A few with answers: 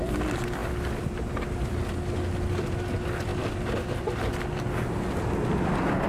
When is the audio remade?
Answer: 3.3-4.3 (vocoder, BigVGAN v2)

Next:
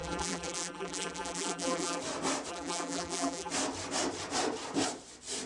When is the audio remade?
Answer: 0.0-2.0 (vocoder, BigVGAN v2); 2.5-3.5

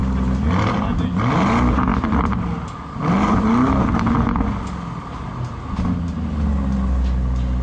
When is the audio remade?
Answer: none